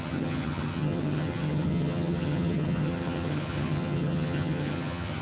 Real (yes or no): no